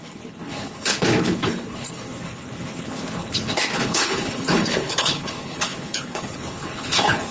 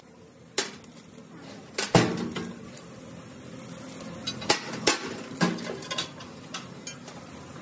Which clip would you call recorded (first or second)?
second